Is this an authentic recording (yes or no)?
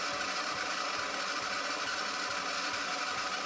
yes